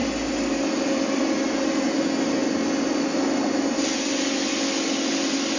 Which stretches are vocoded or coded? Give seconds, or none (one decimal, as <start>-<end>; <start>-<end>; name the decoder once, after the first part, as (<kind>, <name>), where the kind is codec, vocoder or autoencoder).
none